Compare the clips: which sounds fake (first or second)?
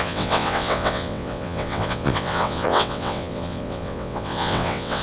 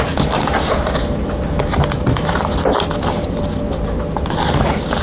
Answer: first